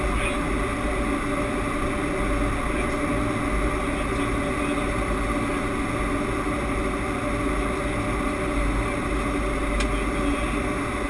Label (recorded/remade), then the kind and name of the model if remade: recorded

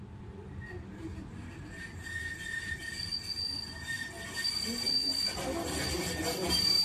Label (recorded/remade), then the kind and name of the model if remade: recorded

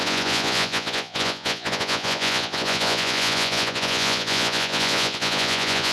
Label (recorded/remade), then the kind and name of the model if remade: remade, vocoder, Vocos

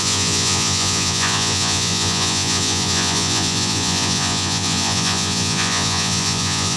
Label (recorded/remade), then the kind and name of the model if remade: remade, vocoder, Vocos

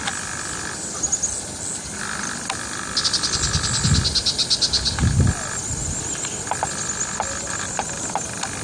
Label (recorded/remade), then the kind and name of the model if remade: recorded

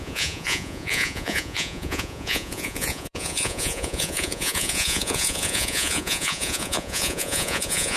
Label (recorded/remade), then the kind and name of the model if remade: remade, vocoder, Vocos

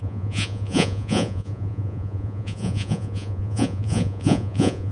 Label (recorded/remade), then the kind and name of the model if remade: remade, vocoder, Vocos